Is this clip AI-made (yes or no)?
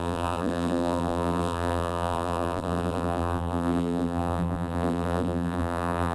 yes